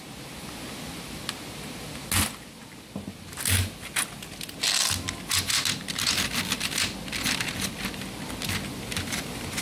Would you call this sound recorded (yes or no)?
yes